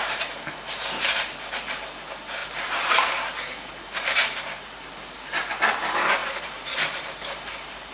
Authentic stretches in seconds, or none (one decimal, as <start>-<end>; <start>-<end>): none